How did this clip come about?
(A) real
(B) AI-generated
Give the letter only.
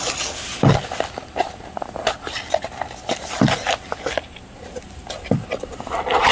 A